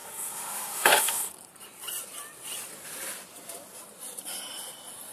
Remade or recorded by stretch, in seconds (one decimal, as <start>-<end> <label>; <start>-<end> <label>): 0.0-1.3 remade; 1.3-5.1 recorded